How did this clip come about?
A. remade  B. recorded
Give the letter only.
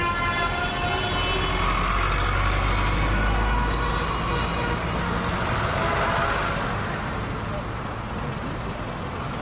B